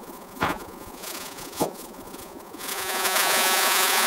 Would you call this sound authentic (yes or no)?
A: no